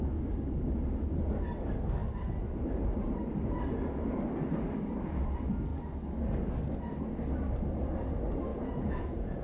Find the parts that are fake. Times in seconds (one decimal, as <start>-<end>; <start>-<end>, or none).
8.5-9.4